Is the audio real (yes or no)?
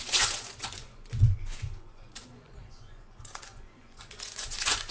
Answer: no